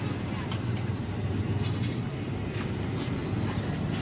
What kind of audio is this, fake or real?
real